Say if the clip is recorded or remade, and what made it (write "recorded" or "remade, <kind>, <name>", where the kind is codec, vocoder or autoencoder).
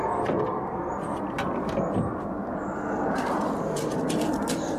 recorded